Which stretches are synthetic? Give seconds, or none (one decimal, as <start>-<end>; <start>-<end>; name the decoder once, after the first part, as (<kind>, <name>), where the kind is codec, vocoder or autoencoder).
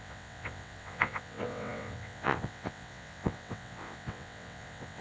0.0-5.0 (vocoder, WaveNeXt)